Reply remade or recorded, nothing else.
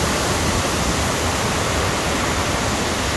remade